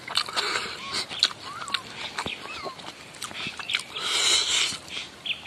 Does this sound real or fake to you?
real